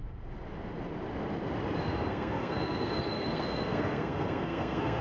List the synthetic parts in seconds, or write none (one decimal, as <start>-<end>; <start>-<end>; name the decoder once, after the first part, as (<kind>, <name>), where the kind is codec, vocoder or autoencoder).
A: 1.9-5.0 (codec, SNAC)